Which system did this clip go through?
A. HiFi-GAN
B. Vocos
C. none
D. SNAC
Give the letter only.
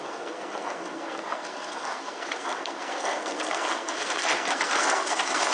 D